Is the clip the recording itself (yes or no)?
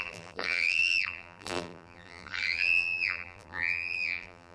no